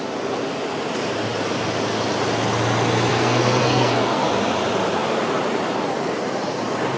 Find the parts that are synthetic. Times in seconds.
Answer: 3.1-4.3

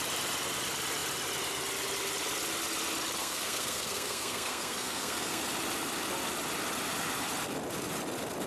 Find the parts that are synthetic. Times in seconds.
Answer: 3.2-5.4